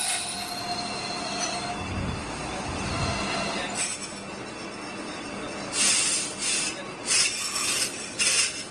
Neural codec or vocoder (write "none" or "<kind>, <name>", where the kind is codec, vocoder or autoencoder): none